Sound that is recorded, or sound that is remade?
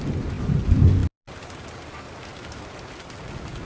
recorded